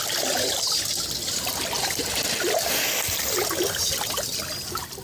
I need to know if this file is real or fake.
real